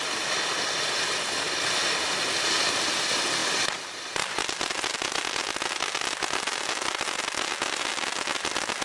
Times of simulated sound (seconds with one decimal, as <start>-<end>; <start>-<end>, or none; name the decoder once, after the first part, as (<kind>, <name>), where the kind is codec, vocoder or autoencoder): none